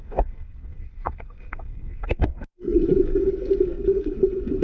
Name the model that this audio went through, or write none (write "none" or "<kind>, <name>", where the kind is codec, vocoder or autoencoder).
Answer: codec, SNAC